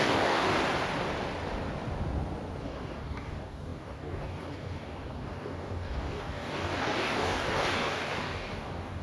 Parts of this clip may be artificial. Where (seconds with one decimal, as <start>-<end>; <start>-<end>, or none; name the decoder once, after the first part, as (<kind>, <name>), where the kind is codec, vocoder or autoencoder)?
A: 0.0-0.5 (codec, DAC); 2.6-9.0